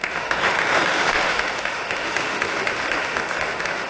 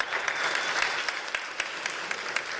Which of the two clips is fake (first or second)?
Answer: first